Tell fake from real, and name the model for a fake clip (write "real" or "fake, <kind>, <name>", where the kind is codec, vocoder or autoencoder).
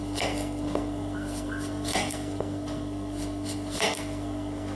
fake, codec, SNAC